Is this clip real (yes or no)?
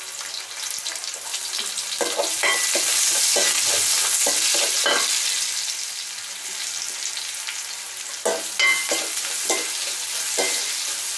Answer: yes